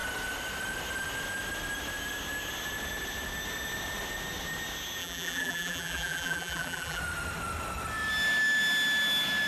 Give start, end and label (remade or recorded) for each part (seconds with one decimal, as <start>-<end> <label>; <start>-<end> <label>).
0.0-5.0 recorded; 5.0-7.0 remade; 7.0-9.5 recorded